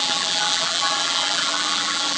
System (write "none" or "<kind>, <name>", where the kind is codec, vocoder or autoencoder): vocoder, BigVGAN v2